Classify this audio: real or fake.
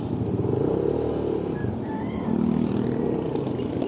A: real